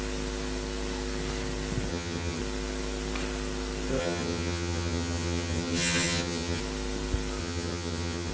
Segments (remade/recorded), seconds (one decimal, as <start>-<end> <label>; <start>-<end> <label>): 0.0-1.9 recorded; 1.9-2.4 remade; 2.4-4.0 recorded; 4.0-6.6 remade; 6.6-7.4 recorded; 7.4-8.3 remade